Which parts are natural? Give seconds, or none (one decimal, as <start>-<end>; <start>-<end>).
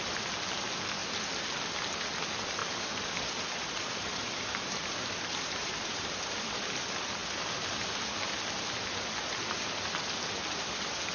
0.0-2.6; 6.5-11.1